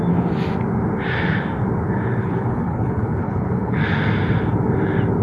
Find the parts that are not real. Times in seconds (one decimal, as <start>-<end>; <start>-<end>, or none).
2.2-3.8